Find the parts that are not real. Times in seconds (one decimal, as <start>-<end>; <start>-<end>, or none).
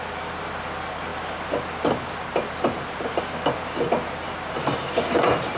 none